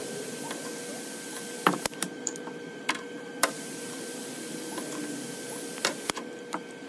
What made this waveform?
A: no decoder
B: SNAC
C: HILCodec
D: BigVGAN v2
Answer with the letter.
D